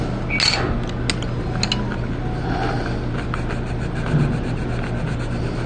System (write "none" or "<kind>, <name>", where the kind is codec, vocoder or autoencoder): none